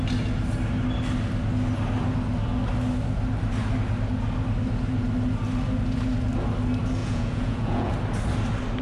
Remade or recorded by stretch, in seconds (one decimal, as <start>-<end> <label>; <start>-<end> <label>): 0.0-7.0 recorded; 7.0-7.9 remade; 7.9-8.8 recorded